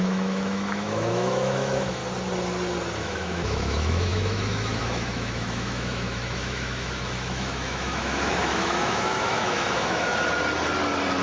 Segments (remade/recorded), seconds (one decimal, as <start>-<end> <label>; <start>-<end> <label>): 0.0-2.0 remade; 2.0-3.0 recorded; 3.0-10.1 remade; 10.1-11.2 recorded